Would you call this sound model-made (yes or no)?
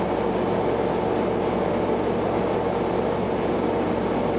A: no